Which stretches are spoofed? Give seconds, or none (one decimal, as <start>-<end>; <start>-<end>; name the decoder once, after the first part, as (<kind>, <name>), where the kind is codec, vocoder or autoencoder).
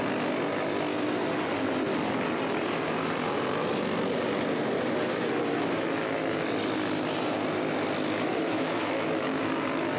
8.3-9.4 (autoencoder, DAC-VAE)